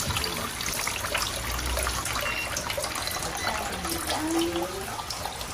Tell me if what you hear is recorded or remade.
recorded